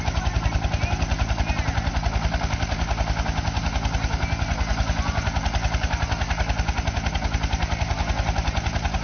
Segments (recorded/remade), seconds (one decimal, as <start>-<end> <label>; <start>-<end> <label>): 0.0-9.0 recorded